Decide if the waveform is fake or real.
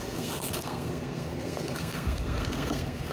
fake